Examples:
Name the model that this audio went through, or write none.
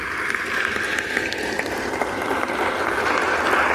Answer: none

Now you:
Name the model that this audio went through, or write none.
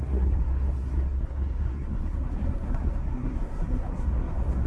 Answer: codec, SNAC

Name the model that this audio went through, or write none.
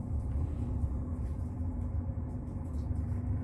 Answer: vocoder, BigVGAN v2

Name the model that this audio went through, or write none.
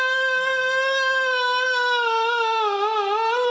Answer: none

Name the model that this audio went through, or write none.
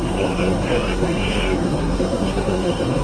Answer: codec, SNAC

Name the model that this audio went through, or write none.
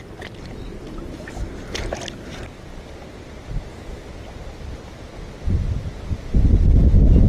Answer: none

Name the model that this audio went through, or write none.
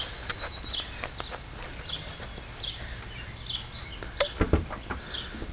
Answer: none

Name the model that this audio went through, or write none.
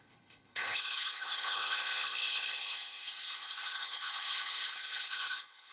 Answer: codec, HILCodec